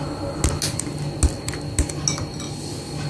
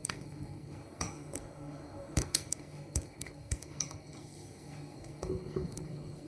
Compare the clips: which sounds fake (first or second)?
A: second